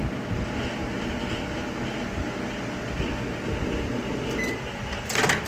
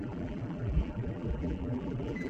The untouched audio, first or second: first